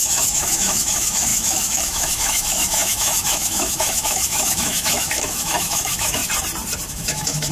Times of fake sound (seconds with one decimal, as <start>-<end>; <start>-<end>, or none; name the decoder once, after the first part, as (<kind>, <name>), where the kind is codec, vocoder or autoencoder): 0.0-6.2 (autoencoder, DAC-VAE); 6.9-7.5